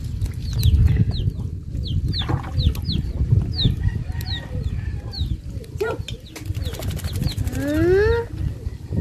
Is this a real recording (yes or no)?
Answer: yes